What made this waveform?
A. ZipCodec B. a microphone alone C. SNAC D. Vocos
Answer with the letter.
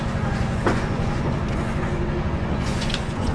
D